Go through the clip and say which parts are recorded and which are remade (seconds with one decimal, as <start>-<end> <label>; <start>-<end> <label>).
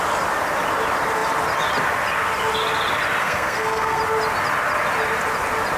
0.0-3.2 recorded; 3.2-4.0 remade; 4.0-5.8 recorded